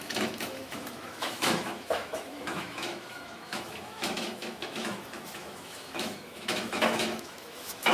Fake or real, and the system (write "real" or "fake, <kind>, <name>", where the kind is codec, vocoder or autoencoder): fake, autoencoder, DAC-VAE